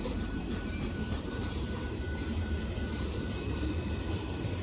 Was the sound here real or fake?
fake